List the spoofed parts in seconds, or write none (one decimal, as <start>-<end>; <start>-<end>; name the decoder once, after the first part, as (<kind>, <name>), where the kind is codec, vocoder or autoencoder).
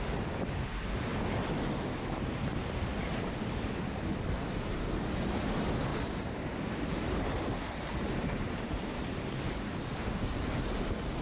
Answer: 2.5-3.0 (vocoder, BigVGAN v2); 5.9-9.4